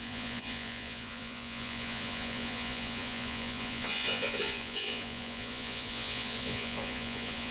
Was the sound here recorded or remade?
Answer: remade